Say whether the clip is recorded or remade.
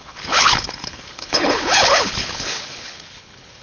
remade